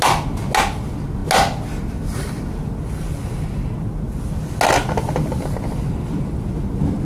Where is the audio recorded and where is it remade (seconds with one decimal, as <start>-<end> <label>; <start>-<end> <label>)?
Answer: 0.0-7.0 recorded